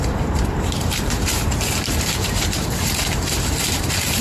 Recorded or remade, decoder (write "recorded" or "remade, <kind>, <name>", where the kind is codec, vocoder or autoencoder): remade, vocoder, BigVGAN v2